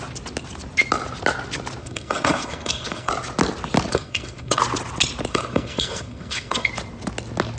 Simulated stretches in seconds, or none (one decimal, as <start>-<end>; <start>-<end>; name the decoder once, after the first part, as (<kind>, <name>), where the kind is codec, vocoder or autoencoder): 1.8-3.1 (codec, SNAC); 3.9-4.6; 5.3-6.7